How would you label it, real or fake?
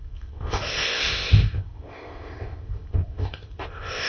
fake